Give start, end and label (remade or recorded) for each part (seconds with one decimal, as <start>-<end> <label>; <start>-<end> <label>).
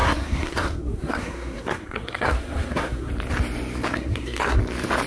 0.0-3.1 remade; 3.1-3.9 recorded; 3.9-4.6 remade; 4.6-5.1 recorded